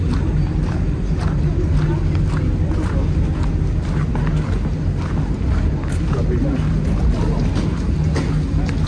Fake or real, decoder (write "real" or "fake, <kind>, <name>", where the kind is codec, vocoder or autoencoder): real